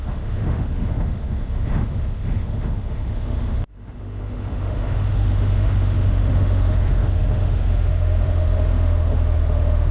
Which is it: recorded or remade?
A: remade